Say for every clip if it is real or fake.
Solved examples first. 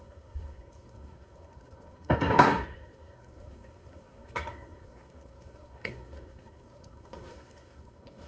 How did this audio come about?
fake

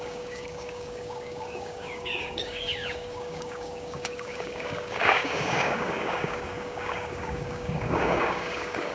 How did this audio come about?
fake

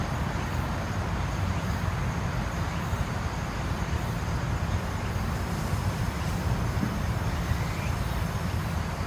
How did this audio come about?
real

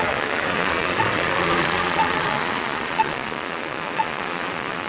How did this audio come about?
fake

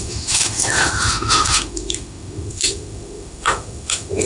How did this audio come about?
fake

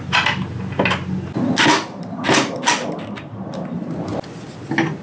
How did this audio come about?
real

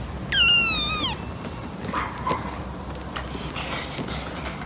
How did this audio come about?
real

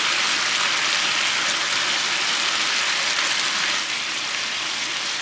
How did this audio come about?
real